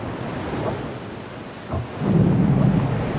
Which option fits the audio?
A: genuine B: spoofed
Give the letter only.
A